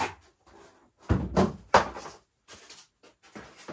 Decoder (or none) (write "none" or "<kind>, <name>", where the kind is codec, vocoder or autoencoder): none